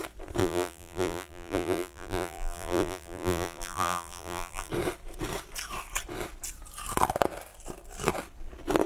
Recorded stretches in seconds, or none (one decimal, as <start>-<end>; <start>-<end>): 0.0-0.4; 4.7-8.9